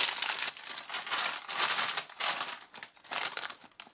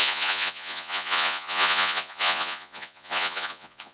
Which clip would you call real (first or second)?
first